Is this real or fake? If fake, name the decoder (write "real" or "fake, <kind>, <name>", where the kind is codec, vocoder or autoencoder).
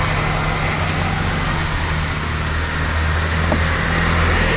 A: real